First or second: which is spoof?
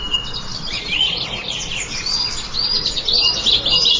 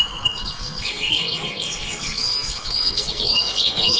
second